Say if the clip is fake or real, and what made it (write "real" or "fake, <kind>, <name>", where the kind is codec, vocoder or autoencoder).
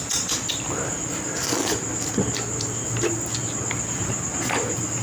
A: real